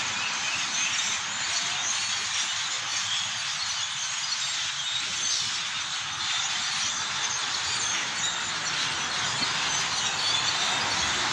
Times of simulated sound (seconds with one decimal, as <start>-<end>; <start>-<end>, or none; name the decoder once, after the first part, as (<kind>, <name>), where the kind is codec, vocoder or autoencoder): none